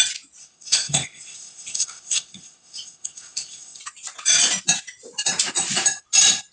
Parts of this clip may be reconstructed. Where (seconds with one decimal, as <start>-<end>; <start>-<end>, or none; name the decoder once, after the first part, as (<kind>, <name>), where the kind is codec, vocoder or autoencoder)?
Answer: 0.4-3.8 (codec, ZipCodec)